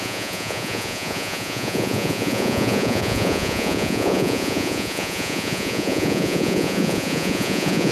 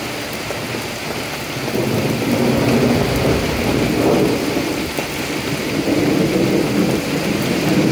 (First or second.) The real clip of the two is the second